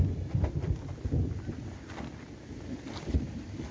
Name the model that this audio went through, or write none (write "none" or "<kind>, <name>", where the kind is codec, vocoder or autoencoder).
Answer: none